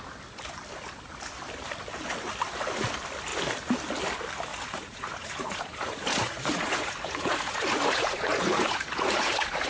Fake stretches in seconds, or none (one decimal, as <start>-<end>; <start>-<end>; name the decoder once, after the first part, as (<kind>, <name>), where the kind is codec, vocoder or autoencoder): 4.5-9.7 (vocoder, Vocos)